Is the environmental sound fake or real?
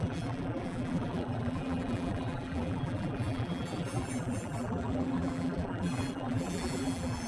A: fake